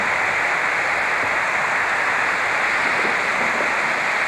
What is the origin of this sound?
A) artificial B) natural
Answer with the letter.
B